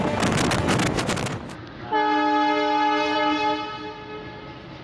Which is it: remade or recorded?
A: recorded